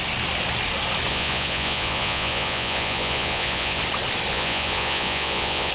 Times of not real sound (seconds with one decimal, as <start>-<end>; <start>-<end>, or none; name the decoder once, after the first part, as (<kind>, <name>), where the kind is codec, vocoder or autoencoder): 1.1-3.8 (vocoder, Vocos); 4.3-5.7